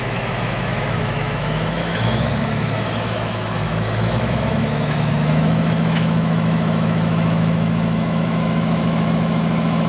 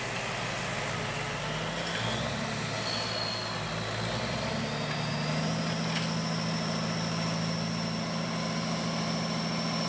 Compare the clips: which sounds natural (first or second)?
second